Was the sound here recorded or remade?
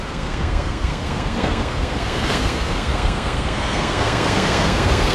remade